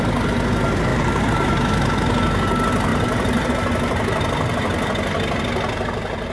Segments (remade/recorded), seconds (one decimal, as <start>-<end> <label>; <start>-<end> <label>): 0.0-0.9 recorded; 0.9-1.5 remade; 1.5-2.9 recorded; 2.9-3.5 remade; 3.5-6.3 recorded